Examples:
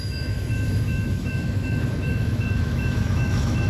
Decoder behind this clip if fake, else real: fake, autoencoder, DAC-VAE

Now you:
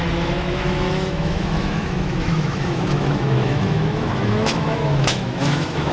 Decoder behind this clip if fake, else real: fake, autoencoder, DAC-VAE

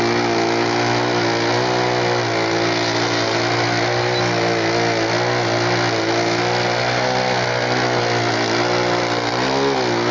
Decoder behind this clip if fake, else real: real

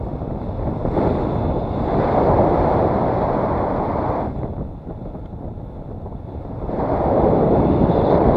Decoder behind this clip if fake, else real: real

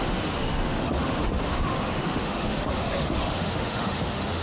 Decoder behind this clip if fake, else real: fake, autoencoder, DAC-VAE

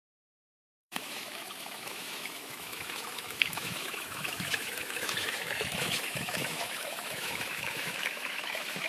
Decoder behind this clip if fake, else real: fake, autoencoder, DAC-VAE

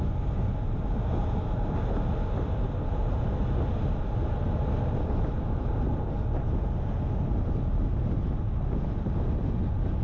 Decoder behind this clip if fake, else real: real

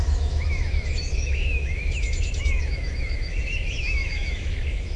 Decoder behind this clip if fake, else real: fake, autoencoder, DAC-VAE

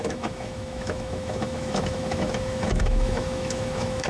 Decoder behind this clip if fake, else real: fake, autoencoder, DAC-VAE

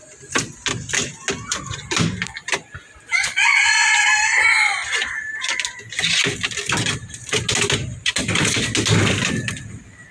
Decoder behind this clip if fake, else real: real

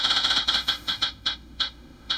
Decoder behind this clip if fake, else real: fake, autoencoder, DAC-VAE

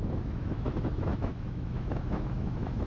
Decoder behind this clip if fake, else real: fake, autoencoder, DAC-VAE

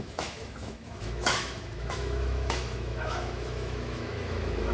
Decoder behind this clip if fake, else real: fake, autoencoder, DAC-VAE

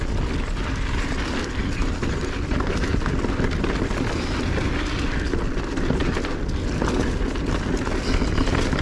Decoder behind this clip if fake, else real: real